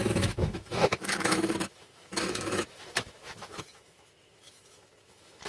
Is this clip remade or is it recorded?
remade